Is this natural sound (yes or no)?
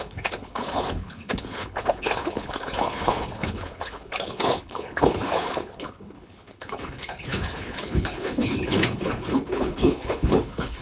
no